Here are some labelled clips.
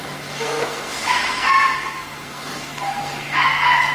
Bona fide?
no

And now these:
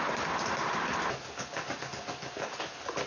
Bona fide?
yes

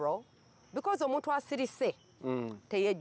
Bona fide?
yes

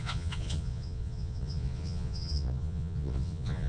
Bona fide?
no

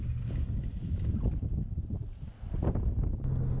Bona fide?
yes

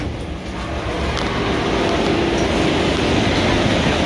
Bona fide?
yes